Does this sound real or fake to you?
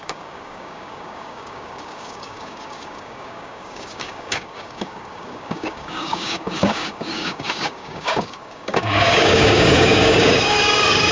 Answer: fake